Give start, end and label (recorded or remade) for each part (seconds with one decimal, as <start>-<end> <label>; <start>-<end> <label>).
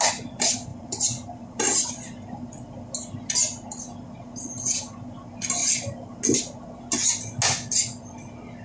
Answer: 0.0-0.7 recorded; 0.7-1.9 remade; 1.9-5.6 recorded; 5.6-6.1 remade; 6.1-8.6 recorded